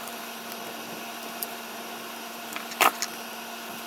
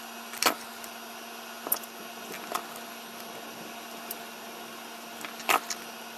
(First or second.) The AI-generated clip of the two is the first